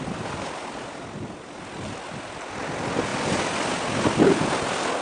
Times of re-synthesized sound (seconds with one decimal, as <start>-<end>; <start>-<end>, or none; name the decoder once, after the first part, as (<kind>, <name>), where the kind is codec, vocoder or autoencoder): none

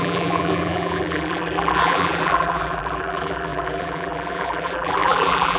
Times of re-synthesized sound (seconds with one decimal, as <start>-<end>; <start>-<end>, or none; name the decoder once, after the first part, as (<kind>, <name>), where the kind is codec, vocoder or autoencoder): 0.0-5.6 (vocoder, BigVGAN v2)

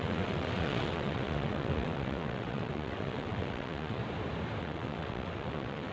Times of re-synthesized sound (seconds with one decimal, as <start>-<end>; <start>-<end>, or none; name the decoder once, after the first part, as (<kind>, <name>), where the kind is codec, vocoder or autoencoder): 0.0-4.0 (vocoder, WaveNeXt); 4.6-5.9

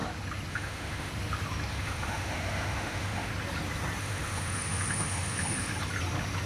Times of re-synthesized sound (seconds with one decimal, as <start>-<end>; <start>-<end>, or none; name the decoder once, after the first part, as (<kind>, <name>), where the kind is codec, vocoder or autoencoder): 0.5-1.1 (autoencoder, DAC-VAE); 1.7-3.3; 4.0-5.7

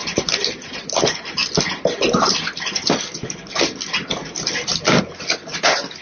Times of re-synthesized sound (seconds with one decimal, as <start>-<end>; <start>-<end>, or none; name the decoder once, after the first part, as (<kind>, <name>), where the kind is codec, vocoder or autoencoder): none

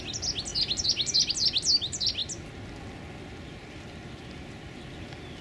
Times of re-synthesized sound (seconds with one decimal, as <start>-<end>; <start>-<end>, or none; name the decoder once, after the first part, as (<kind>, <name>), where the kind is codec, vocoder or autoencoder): none